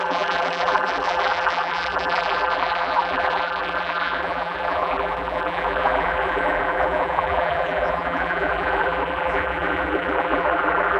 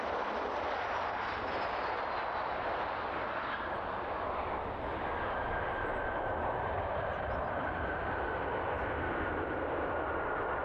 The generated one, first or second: first